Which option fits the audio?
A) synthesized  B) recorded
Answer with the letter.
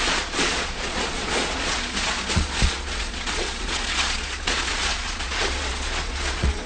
A